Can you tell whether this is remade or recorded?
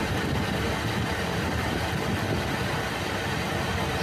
remade